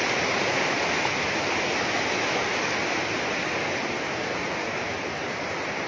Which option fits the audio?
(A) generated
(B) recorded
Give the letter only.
B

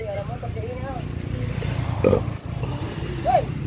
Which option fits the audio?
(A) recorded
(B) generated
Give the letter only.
A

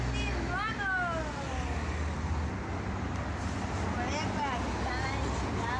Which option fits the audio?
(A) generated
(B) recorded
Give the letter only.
B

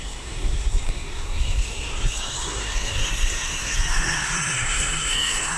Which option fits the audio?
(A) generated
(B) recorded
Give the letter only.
A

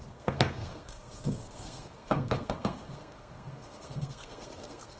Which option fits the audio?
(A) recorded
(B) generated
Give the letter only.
B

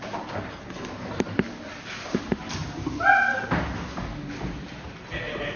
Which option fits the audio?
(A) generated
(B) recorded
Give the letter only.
B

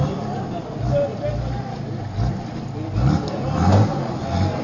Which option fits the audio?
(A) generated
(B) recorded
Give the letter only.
B